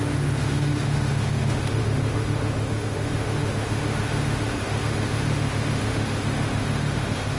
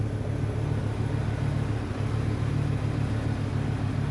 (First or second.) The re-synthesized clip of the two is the first